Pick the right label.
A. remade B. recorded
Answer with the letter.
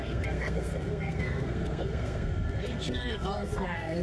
A